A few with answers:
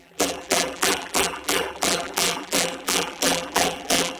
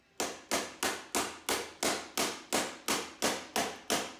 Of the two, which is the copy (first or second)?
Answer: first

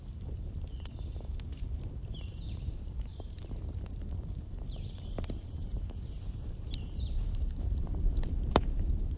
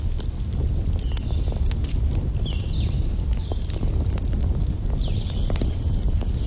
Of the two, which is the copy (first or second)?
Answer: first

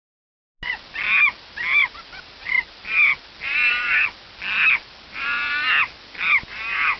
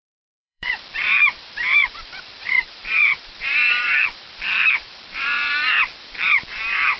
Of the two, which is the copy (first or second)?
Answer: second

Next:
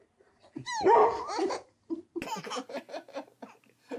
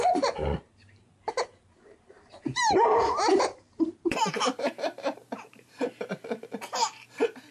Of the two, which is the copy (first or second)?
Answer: second